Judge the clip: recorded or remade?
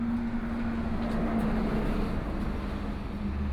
recorded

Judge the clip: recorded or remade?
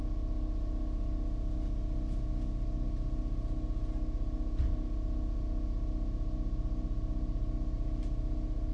recorded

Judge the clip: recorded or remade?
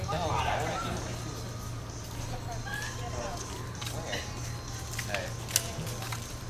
recorded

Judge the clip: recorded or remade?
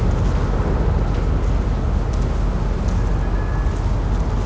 recorded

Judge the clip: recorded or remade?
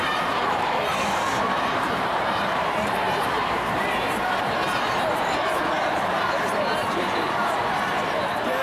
remade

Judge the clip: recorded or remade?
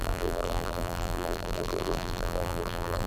remade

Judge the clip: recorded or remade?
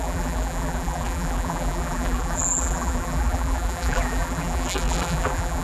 remade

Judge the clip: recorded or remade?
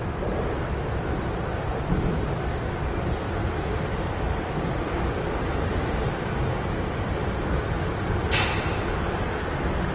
remade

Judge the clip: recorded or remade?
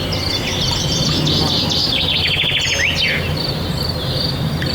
recorded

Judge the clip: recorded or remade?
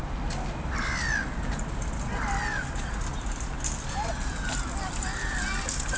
recorded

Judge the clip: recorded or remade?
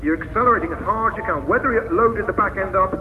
recorded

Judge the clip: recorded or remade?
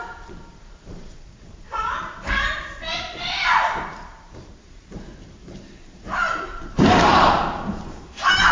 remade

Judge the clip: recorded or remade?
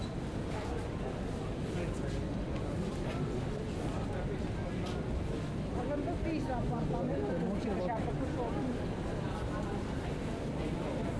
recorded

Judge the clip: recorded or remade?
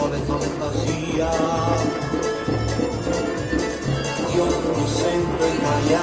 recorded